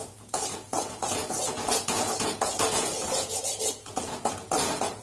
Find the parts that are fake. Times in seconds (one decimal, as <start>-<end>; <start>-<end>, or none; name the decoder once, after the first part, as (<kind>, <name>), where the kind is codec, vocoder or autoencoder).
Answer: 0.0-5.0 (vocoder, Vocos)